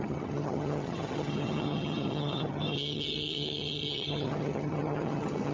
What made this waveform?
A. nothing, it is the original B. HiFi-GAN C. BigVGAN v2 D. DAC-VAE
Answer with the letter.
B